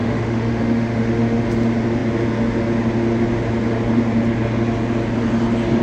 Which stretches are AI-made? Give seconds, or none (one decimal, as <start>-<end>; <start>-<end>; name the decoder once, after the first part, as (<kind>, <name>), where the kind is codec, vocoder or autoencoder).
0.0-1.4 (autoencoder, DAC-VAE)